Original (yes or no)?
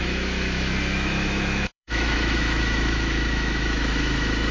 no